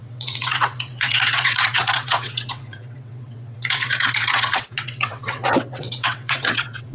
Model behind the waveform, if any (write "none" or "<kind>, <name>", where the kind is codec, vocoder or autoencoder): vocoder, WaveNeXt